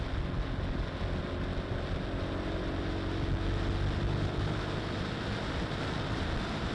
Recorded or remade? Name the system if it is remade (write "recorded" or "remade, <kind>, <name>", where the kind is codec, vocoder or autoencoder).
recorded